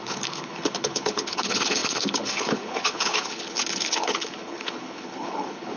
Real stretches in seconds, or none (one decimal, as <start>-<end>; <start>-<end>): none

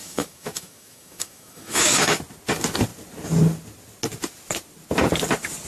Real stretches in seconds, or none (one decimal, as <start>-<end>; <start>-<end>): 2.2-5.7

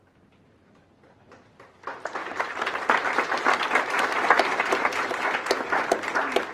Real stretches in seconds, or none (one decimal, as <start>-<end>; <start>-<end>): 0.0-2.2; 4.7-6.5

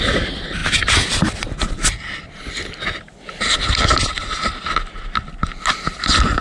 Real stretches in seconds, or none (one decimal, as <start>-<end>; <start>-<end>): 0.0-6.4

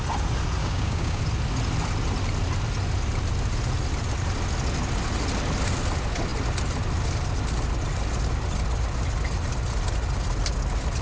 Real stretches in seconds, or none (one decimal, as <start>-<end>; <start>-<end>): 0.0-0.6; 1.2-11.0

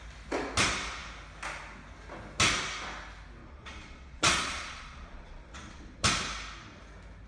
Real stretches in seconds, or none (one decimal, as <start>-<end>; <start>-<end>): 0.0-3.4; 6.0-7.3